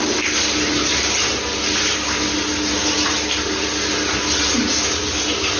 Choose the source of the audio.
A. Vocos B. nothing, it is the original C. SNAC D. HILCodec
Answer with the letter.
B